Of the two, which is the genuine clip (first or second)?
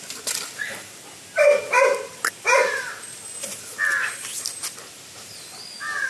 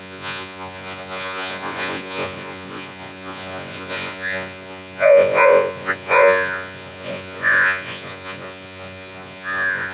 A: first